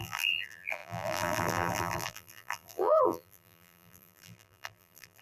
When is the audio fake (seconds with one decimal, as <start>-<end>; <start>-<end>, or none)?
0.0-5.2